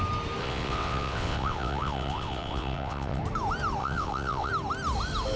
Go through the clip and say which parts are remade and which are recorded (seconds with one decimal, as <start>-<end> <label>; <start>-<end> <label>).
0.0-0.4 recorded; 0.4-3.2 remade; 3.2-3.8 recorded; 3.8-4.5 remade; 4.5-5.4 recorded